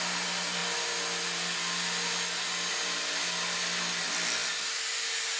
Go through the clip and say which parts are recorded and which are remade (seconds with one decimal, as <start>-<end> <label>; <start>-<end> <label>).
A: 0.0-5.4 recorded